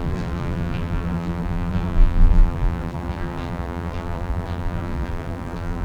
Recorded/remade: remade